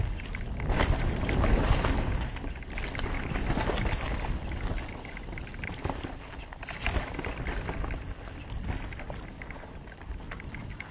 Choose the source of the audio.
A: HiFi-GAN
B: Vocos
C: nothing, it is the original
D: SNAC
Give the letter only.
C